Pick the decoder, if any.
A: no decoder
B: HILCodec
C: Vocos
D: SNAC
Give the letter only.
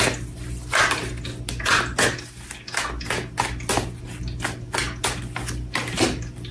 A